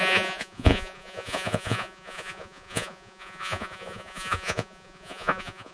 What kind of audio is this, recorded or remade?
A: remade